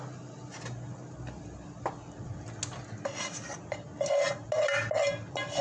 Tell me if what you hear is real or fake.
real